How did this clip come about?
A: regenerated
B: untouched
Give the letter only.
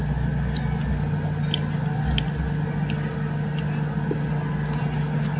B